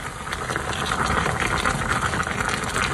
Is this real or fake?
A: real